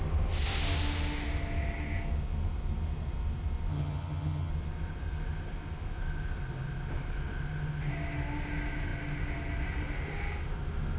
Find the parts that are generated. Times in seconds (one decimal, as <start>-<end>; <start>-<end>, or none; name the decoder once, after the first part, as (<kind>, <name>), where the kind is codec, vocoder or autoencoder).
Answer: 3.7-4.5 (vocoder, HiFi-GAN)